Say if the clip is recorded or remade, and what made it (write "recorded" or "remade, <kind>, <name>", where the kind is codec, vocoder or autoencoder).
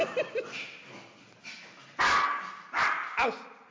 recorded